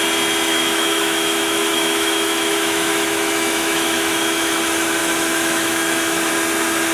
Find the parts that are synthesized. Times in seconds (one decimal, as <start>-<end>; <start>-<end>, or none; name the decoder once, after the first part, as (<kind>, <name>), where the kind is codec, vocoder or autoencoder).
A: 0.5-4.6 (autoencoder, DAC-VAE); 5.0-6.3